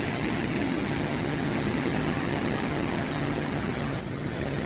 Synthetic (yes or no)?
yes